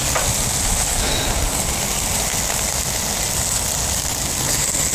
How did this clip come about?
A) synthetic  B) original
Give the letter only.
B